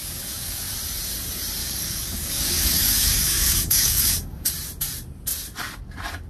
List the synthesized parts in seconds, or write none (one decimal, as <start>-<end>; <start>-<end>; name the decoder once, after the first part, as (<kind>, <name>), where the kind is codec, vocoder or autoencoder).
0.0-0.6 (codec, DAC); 1.6-4.5